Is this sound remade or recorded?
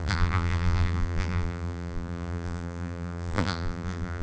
remade